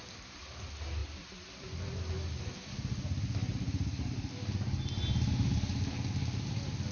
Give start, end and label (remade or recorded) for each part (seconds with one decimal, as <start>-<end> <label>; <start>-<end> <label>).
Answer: 0.0-1.0 recorded; 1.0-2.0 remade; 2.0-6.9 recorded